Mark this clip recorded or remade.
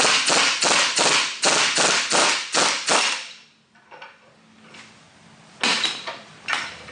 recorded